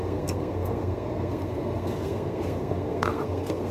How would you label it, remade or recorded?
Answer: remade